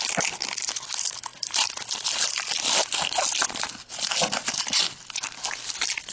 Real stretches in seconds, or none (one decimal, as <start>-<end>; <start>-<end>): 0.0-6.1